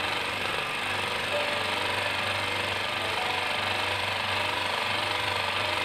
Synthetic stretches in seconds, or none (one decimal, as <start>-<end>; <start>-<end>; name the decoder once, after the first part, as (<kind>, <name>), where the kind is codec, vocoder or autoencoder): 0.0-0.5 (vocoder, BigVGAN v2); 3.9-5.8